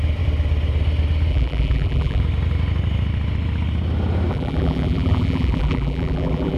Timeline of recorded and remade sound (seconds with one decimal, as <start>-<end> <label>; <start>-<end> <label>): 0.0-1.3 recorded; 1.3-2.2 remade; 2.2-4.3 recorded; 4.3-6.6 remade